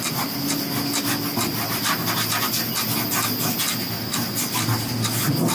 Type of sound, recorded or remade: recorded